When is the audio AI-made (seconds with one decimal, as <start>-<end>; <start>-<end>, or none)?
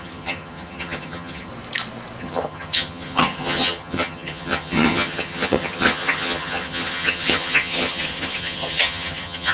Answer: 0.0-1.5; 2.2-9.5